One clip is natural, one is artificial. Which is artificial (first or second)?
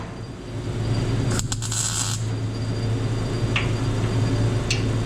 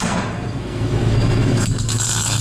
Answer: second